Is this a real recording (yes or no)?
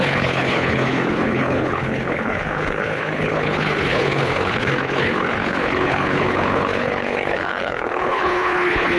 no